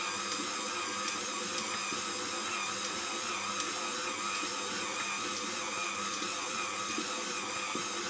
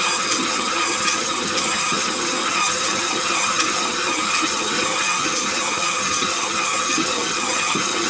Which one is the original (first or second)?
first